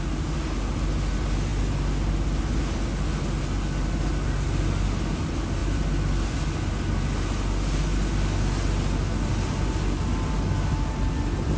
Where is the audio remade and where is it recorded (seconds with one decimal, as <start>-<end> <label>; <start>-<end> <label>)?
0.0-11.6 recorded